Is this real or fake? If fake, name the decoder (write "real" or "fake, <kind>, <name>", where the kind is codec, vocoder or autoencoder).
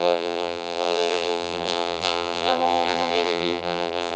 fake, vocoder, BigVGAN v2